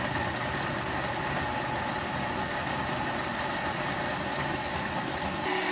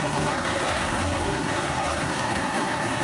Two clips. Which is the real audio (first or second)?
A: first